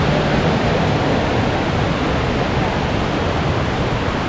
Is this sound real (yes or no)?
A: yes